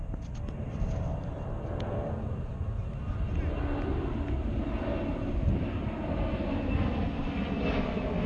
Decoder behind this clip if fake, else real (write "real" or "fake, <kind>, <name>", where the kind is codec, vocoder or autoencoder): real